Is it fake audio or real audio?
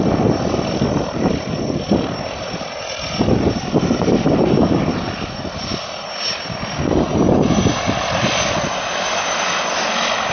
real